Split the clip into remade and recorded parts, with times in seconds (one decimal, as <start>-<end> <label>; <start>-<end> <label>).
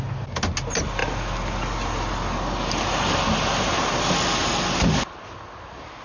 0.0-6.0 recorded